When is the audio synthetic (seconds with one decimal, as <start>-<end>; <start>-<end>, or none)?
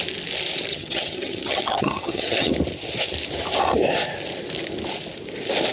0.7-2.5